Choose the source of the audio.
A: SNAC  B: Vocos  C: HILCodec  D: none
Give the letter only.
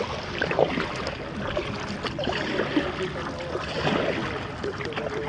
D